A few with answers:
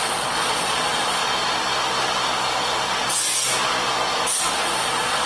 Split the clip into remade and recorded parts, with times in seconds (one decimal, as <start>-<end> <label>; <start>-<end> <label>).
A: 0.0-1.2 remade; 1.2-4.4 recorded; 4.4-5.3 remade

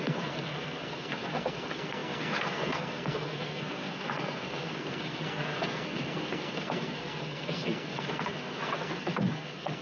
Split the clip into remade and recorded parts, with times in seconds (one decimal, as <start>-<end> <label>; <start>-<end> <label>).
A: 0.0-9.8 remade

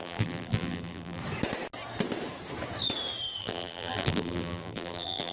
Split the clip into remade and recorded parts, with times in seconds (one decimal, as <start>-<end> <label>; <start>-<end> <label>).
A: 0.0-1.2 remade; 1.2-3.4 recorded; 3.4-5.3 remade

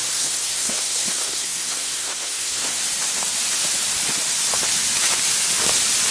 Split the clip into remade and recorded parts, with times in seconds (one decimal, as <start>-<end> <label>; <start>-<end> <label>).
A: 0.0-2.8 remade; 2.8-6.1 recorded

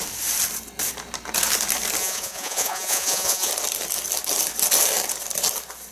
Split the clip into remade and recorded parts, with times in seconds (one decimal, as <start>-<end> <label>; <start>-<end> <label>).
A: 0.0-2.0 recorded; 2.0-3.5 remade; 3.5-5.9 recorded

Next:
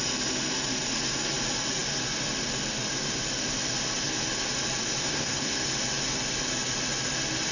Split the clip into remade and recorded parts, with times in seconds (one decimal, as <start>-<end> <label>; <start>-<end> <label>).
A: 0.0-5.0 recorded; 5.0-5.6 remade; 5.6-7.5 recorded

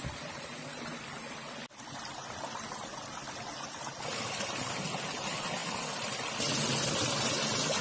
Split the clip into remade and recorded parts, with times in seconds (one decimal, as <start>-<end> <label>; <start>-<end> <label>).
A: 0.0-7.8 recorded

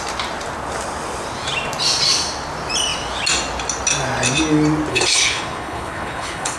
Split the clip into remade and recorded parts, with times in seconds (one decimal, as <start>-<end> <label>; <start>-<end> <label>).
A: 0.0-4.9 recorded; 4.9-6.6 remade